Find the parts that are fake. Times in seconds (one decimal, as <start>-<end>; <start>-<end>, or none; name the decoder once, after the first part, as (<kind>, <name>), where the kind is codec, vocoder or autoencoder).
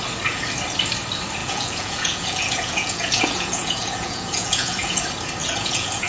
1.4-5.0 (vocoder, Vocos); 5.4-6.1